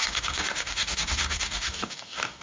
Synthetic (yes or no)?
yes